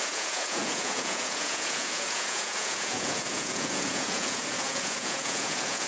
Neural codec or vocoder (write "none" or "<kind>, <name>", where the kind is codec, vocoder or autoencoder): vocoder, Vocos